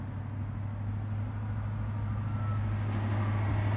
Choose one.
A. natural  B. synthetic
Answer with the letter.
A